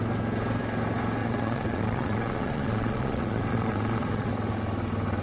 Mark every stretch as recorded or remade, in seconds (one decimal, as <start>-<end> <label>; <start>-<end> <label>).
0.0-1.2 recorded; 1.2-4.3 remade; 4.3-5.2 recorded